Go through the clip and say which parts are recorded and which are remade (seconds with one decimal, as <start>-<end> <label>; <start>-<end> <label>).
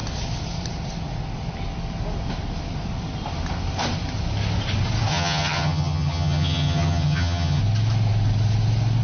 0.0-5.1 recorded; 5.1-7.6 remade; 7.6-9.0 recorded